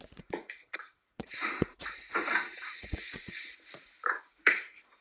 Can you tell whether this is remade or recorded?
remade